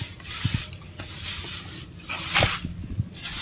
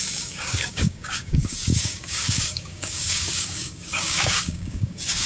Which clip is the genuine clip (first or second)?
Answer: first